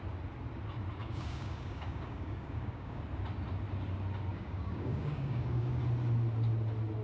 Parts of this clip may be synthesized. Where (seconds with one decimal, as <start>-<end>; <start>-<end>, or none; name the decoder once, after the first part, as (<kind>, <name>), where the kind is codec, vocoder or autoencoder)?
1.0-3.0 (codec, DAC); 4.3-5.8